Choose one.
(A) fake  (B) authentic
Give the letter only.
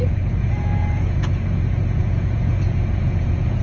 A